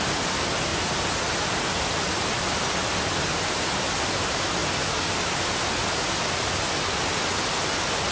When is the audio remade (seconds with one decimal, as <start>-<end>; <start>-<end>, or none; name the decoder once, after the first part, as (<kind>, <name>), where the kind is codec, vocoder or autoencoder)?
0.7-1.6 (vocoder, BigVGAN v2)